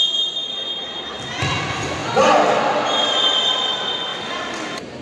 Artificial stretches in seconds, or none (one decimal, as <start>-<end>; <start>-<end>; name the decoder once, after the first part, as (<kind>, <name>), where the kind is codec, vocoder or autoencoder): none